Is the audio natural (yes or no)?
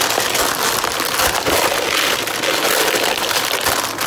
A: yes